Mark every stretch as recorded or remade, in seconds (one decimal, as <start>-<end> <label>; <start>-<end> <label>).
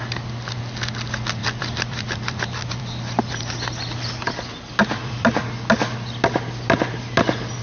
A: 0.0-1.4 recorded; 1.4-3.5 remade; 3.5-4.8 recorded; 4.8-5.4 remade; 5.4-7.6 recorded